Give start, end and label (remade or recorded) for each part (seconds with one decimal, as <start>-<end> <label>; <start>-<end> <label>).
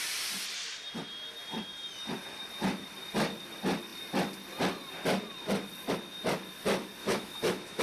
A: 0.0-7.0 recorded; 7.0-7.8 remade